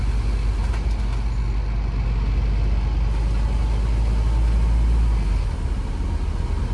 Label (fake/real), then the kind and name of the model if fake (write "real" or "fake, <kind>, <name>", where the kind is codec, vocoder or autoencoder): real